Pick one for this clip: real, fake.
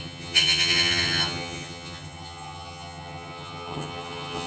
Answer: fake